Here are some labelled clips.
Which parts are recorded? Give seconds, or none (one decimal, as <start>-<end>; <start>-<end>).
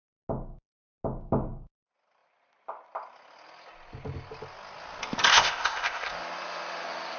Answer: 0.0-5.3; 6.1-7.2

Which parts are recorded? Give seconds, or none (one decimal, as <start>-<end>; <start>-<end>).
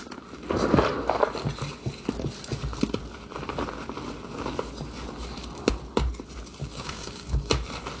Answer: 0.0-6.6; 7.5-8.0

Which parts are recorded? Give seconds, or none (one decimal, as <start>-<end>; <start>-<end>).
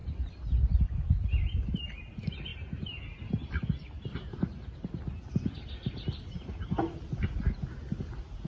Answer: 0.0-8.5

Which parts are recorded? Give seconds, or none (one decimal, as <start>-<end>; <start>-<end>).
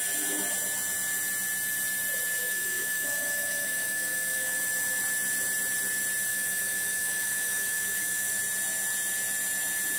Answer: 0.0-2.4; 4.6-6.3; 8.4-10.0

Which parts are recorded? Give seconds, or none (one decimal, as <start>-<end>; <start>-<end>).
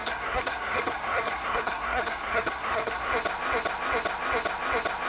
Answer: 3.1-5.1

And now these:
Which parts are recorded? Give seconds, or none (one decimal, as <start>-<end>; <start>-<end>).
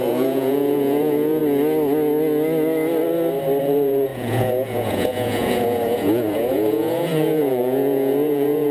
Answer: 1.4-3.6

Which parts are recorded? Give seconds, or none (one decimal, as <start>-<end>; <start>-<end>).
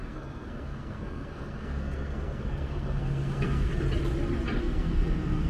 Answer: 3.7-4.6